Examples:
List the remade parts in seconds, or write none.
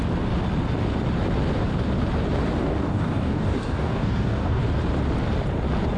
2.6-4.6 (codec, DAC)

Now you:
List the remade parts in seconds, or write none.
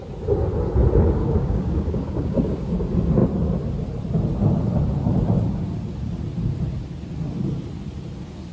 1.2-2.7 (codec, DAC)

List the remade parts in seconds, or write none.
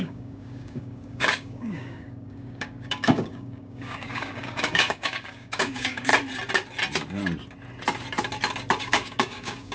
0.0-6.1 (codec, DAC); 8.8-9.7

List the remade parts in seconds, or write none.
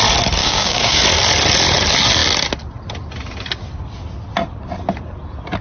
0.4-1.0 (codec, DAC)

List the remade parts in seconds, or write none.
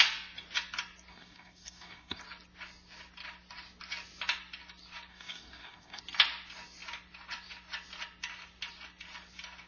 1.1-2.2 (codec, DAC); 5.1-6.0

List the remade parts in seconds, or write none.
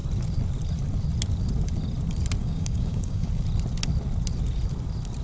2.4-3.3 (codec, DAC)